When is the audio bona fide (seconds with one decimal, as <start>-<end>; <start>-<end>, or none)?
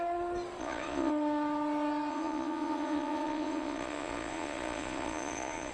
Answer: 0.0-0.6; 1.1-2.1